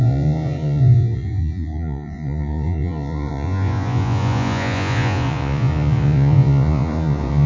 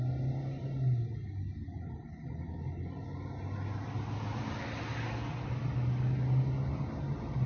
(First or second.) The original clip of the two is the second